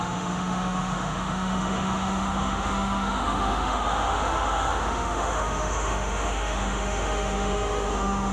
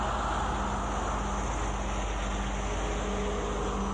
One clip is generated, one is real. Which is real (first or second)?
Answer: second